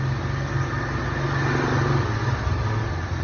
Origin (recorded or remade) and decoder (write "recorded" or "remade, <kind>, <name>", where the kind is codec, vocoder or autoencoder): recorded